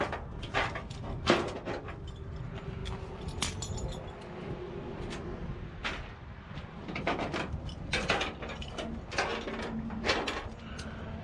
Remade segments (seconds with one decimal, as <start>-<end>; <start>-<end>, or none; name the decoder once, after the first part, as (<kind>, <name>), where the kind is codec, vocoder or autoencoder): none